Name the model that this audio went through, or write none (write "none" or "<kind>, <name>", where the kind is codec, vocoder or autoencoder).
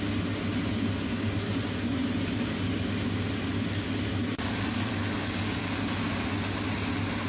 none